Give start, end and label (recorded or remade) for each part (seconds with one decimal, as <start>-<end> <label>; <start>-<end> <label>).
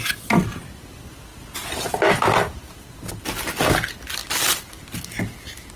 0.0-5.8 recorded